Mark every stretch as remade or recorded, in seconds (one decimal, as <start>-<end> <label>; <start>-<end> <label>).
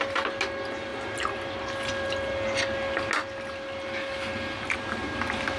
0.0-5.6 recorded